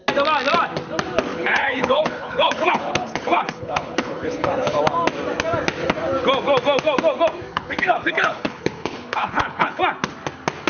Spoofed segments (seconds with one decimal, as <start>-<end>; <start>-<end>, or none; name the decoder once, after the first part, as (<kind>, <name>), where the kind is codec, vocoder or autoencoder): 1.3-4.8 (codec, HILCodec); 7.5-9.8